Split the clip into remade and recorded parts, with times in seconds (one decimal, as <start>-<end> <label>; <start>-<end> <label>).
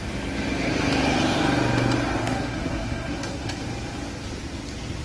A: 0.0-2.2 recorded; 2.2-3.6 remade; 3.6-5.0 recorded